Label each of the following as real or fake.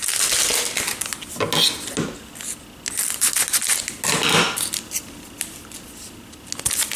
real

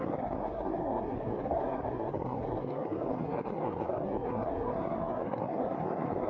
fake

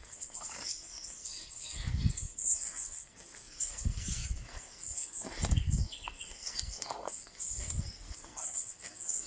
fake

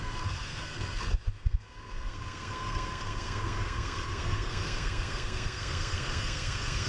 fake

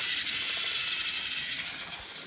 real